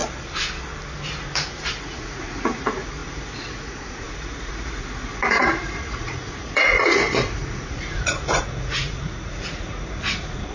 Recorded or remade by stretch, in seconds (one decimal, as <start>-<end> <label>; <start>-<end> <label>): 0.0-1.7 recorded; 1.7-10.5 remade